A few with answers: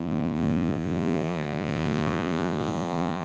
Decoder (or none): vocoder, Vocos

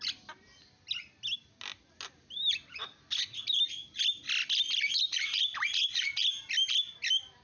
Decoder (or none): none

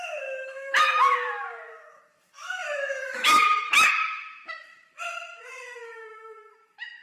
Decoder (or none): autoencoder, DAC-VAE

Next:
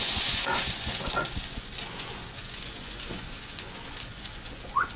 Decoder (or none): vocoder, Vocos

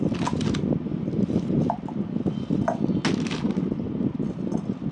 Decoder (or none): none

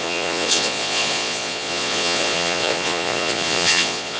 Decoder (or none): vocoder, Vocos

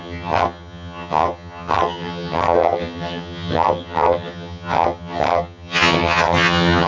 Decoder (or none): vocoder, HiFi-GAN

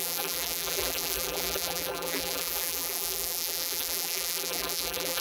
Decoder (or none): vocoder, BigVGAN v2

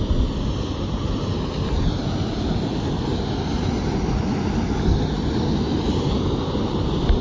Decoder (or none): none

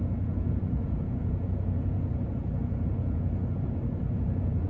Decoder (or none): vocoder, Vocos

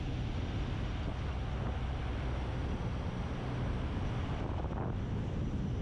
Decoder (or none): none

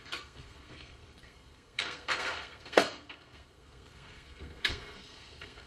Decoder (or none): codec, SNAC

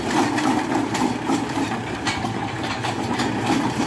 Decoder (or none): vocoder, BigVGAN v2